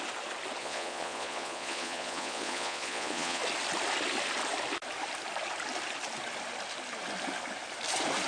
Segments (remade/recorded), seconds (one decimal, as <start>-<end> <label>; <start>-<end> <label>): 0.0-0.6 recorded; 0.6-3.4 remade; 3.4-8.3 recorded